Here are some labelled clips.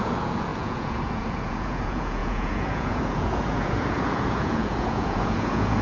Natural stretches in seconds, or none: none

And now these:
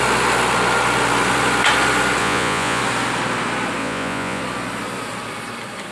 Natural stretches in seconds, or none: 0.0-2.2; 2.8-3.8; 4.4-5.9

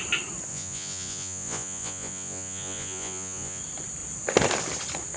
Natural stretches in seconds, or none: 0.0-0.5; 3.6-5.2

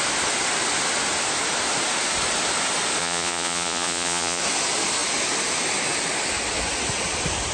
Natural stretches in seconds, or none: 0.0-3.0; 4.4-7.5

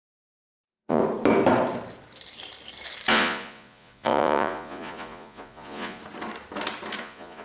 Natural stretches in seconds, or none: 1.0-3.1; 6.0-7.0

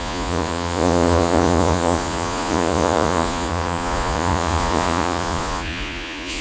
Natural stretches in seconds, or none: none

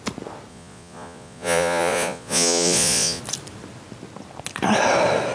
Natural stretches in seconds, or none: 0.0-0.5; 3.2-5.3